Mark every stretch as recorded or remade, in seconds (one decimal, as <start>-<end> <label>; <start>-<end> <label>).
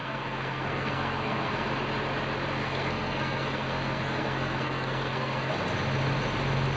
0.0-1.7 remade; 1.7-2.6 recorded; 2.6-5.5 remade; 5.5-6.8 recorded